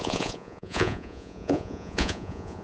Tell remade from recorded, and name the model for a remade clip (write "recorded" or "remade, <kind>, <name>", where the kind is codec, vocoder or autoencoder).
remade, vocoder, Vocos